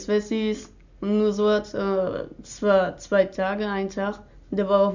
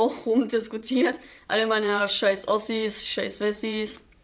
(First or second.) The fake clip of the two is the second